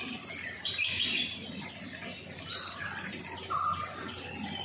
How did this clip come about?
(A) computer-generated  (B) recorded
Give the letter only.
B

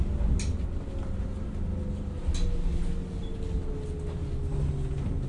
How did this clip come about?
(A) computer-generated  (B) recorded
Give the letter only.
B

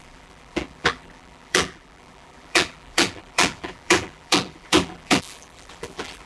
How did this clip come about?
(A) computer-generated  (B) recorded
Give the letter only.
A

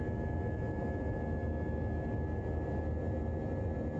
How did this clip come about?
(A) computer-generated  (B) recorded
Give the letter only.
B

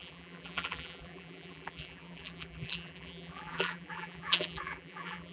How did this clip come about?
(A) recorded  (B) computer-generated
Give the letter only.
B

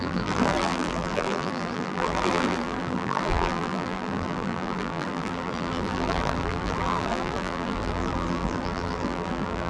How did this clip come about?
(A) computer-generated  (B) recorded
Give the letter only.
A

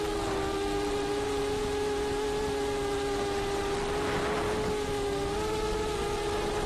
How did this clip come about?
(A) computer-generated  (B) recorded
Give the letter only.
B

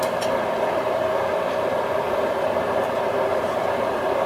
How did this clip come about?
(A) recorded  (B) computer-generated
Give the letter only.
B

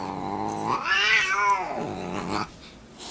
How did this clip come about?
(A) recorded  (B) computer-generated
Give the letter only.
A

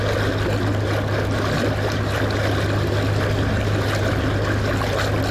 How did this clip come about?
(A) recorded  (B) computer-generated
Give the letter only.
A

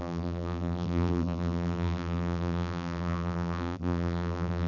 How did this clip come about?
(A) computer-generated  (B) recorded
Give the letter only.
A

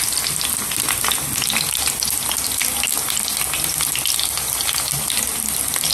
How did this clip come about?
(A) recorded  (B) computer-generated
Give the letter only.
A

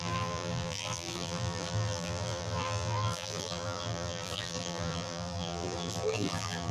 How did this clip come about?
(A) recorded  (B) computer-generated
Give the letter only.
B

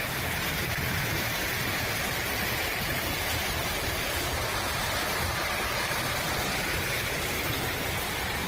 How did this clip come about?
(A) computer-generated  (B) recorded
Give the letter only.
A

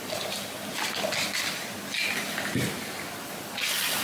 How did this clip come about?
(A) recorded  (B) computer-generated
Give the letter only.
A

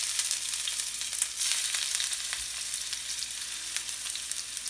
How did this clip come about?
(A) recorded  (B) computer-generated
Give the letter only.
B